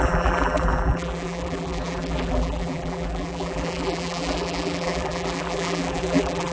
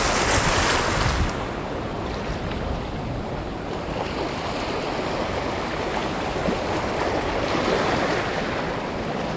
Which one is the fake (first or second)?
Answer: first